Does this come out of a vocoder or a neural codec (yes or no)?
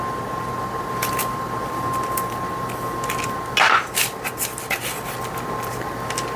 no